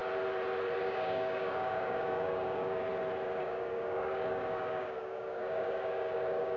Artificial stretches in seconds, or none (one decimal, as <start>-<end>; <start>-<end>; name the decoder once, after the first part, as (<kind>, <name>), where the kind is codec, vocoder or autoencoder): 0.8-2.9 (codec, DAC); 3.4-6.6